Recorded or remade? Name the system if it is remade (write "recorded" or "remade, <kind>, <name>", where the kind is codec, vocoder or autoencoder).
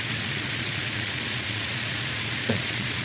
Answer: remade, vocoder, Vocos